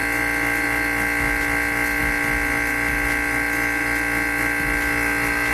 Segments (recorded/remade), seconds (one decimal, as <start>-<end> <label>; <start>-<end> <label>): 0.0-5.5 recorded